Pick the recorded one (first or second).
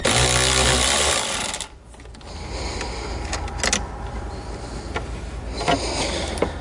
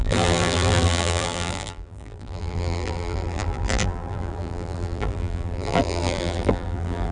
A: first